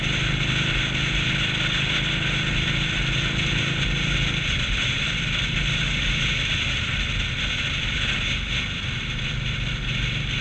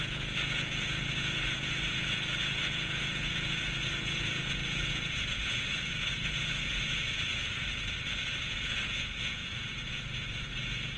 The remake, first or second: second